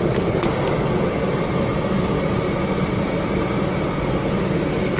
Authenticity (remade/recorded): recorded